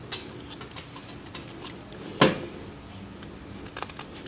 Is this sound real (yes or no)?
yes